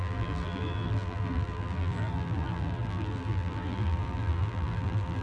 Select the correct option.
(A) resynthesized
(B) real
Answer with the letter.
A